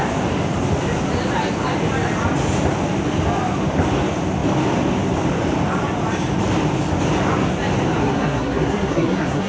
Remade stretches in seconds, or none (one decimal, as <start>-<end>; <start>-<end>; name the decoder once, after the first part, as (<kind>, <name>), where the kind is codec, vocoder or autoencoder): 8.0-9.5 (codec, SNAC)

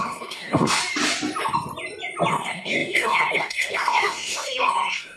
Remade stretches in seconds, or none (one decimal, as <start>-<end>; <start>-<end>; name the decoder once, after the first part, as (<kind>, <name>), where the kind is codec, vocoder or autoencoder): 0.0-0.8 (codec, SNAC); 2.3-5.2

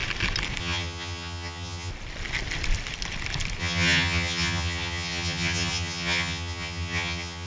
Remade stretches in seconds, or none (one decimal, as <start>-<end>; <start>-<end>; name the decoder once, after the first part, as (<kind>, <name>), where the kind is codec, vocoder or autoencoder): 0.6-1.9 (vocoder, HiFi-GAN); 3.6-7.5

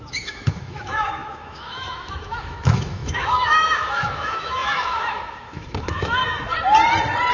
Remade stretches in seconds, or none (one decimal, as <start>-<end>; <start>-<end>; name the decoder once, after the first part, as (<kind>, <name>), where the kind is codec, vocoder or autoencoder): 0.0-6.2 (autoencoder, DAC-VAE)

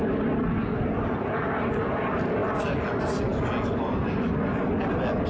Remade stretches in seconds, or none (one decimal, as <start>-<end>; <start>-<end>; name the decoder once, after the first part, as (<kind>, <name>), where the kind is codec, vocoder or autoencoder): none

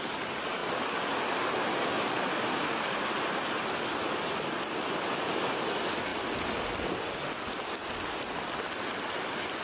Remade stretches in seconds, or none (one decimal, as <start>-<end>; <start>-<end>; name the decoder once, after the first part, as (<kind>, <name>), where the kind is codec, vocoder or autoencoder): none

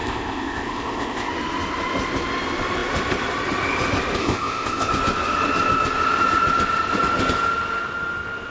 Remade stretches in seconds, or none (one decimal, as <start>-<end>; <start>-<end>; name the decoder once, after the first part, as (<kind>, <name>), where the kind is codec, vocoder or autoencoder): 0.0-1.3 (codec, ZipCodec); 4.2-4.9